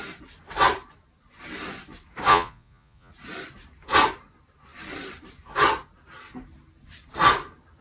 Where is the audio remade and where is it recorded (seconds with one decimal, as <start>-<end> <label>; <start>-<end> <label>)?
0.0-2.3 recorded; 2.3-3.1 remade; 3.1-7.8 recorded